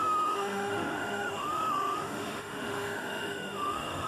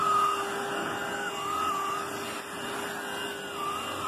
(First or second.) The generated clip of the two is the first